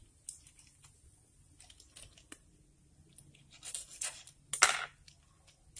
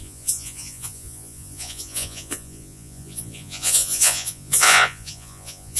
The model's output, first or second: second